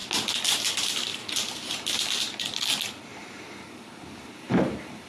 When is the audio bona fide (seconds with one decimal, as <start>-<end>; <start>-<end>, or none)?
0.0-1.2; 2.1-3.1